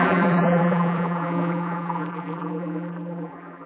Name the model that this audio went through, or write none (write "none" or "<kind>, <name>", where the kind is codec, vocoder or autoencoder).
vocoder, BigVGAN v2